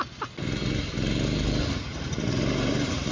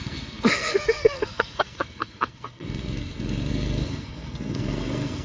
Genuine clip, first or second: first